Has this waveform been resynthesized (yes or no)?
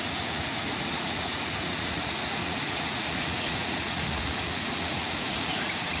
yes